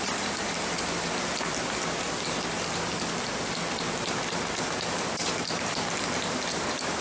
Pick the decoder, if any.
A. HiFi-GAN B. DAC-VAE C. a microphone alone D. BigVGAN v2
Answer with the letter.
C